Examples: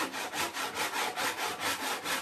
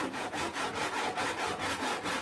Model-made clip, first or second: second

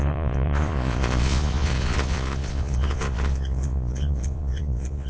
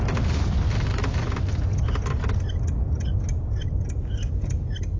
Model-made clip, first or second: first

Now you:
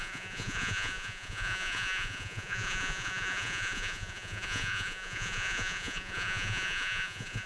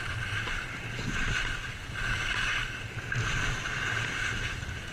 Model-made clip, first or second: first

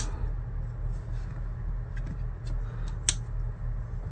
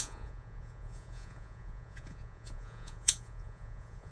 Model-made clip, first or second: second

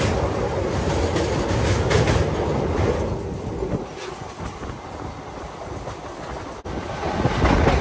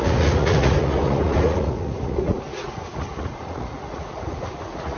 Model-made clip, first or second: second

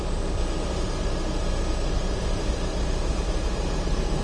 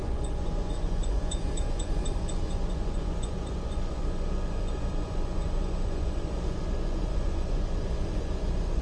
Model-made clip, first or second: second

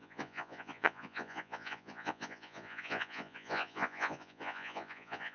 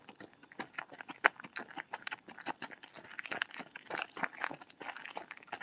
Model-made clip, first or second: first